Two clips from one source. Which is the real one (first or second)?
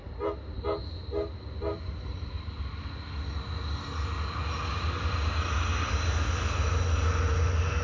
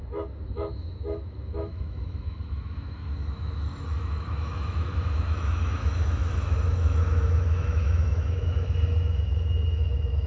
first